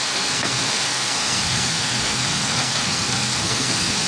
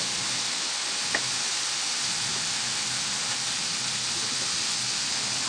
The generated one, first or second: first